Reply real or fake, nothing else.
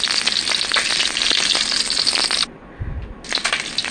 real